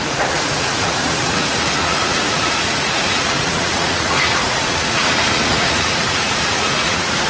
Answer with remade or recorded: remade